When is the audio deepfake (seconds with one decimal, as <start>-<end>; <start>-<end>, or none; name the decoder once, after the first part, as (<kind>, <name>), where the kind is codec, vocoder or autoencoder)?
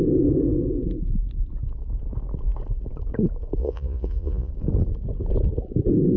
3.6-4.5 (vocoder, Vocos)